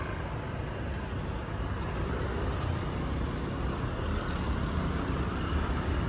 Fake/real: real